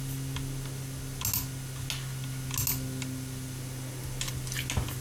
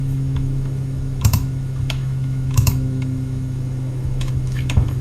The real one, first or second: first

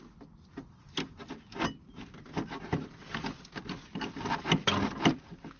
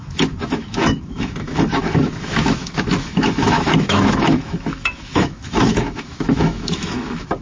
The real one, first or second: first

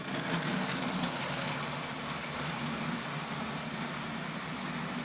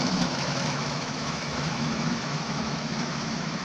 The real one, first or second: first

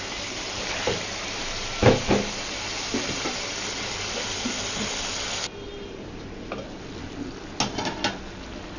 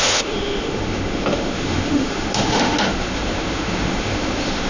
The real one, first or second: first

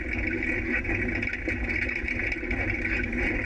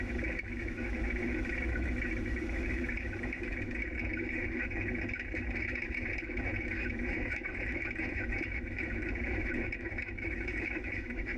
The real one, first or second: first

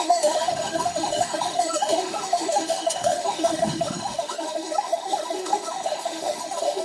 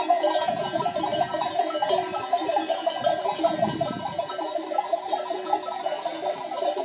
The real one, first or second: second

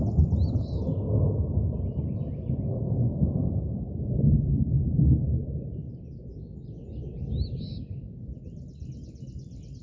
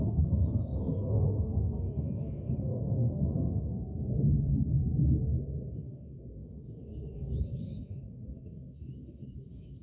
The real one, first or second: first